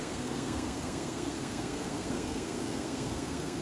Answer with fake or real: fake